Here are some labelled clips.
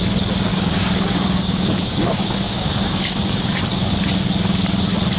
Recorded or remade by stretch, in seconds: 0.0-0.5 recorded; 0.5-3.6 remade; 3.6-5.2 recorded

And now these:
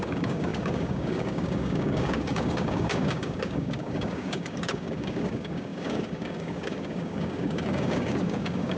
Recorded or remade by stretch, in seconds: 0.0-8.8 remade

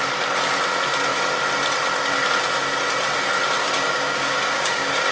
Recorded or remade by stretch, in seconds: 0.0-3.6 recorded; 3.6-5.1 remade

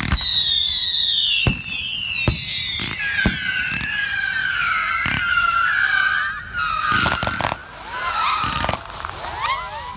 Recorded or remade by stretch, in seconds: 0.0-4.4 recorded; 4.4-4.9 remade; 4.9-10.0 recorded

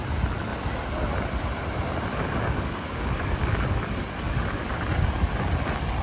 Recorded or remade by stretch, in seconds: 0.0-2.1 recorded; 2.1-4.6 remade; 4.6-6.0 recorded

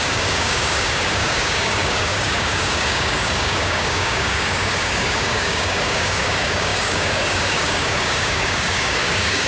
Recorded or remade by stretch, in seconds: 0.0-9.5 remade

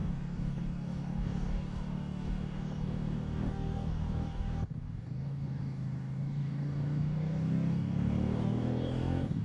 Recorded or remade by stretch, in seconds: 0.0-9.4 remade